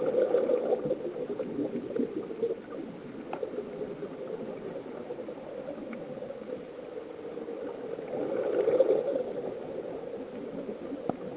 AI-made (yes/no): no